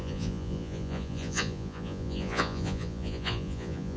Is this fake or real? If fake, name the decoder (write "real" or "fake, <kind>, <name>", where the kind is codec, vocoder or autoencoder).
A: fake, vocoder, Vocos